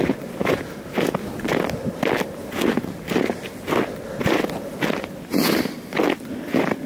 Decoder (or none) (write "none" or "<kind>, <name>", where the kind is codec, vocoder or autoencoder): none